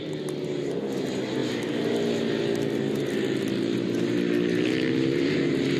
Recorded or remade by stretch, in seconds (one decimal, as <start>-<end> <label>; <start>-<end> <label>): 0.0-5.8 recorded